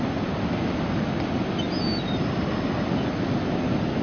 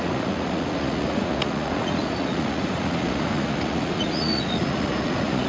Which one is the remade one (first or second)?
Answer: second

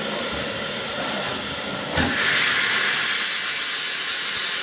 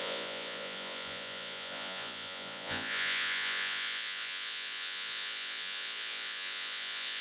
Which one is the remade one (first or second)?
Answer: second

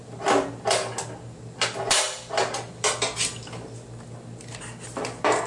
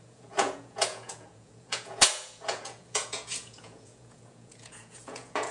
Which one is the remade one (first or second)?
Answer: second